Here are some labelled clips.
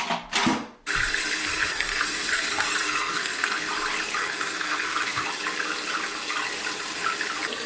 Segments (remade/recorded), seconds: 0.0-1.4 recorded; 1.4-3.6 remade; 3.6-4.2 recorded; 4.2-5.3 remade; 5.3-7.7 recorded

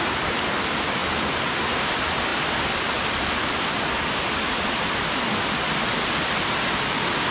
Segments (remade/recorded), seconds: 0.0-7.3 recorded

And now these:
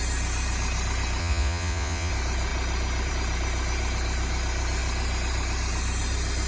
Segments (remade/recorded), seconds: 0.0-1.2 recorded; 1.2-2.1 remade; 2.1-6.5 recorded

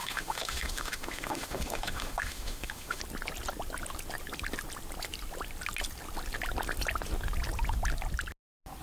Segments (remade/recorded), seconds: 0.0-3.0 remade; 3.0-8.8 recorded

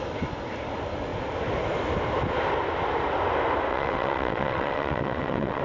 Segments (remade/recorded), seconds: 0.0-3.7 recorded; 3.7-5.6 remade

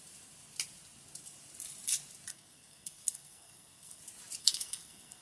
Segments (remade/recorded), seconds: 0.0-2.3 recorded; 2.3-4.0 remade; 4.0-4.4 recorded; 4.4-5.2 remade

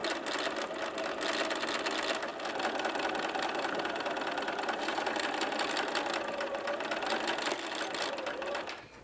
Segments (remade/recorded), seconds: 0.0-9.0 recorded

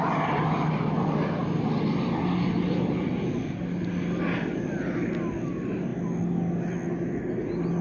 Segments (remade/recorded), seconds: 0.0-7.8 recorded